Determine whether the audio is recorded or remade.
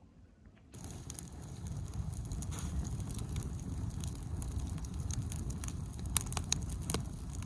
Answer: remade